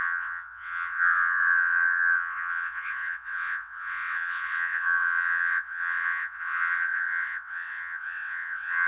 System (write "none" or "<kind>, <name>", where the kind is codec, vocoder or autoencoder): vocoder, WaveNeXt